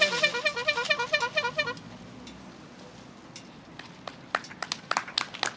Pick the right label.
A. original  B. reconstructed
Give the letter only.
A